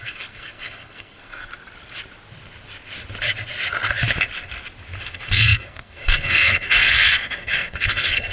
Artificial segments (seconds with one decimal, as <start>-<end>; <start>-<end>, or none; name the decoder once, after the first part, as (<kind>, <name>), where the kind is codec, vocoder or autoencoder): 0.0-1.5 (codec, SNAC); 5.0-8.3